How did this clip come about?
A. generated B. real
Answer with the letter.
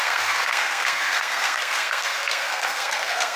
A